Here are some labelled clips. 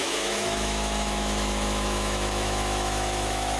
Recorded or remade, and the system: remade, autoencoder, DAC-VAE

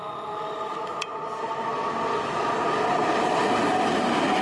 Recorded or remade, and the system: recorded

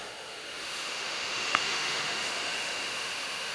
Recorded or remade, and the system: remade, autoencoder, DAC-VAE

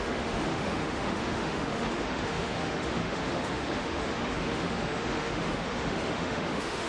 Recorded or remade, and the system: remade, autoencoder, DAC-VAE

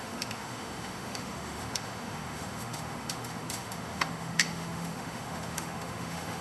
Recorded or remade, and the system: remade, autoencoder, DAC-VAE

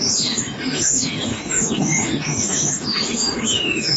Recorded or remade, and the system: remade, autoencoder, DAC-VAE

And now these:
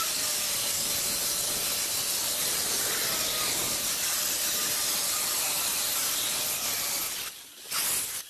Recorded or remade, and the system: recorded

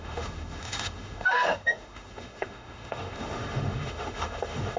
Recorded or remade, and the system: remade, autoencoder, DAC-VAE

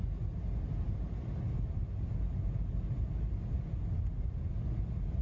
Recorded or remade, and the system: recorded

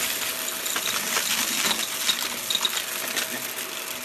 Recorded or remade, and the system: recorded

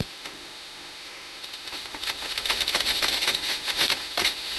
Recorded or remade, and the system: remade, autoencoder, DAC-VAE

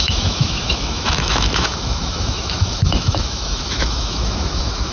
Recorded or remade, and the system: remade, autoencoder, DAC-VAE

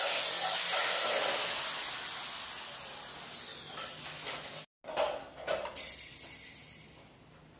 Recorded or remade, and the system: recorded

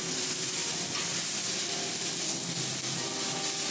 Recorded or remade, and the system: recorded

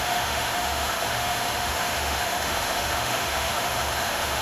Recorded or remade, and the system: remade, autoencoder, DAC-VAE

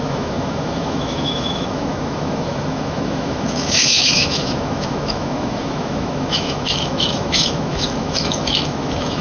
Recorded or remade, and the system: remade, autoencoder, DAC-VAE